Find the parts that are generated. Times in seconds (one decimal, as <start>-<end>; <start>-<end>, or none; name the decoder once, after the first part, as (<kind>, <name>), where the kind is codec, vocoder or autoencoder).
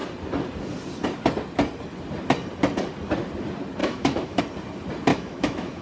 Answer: 3.8-4.4 (autoencoder, DAC-VAE); 5.1-5.8